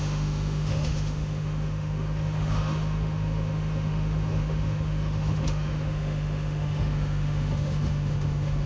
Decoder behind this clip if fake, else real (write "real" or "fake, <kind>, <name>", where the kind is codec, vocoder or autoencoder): fake, autoencoder, DAC-VAE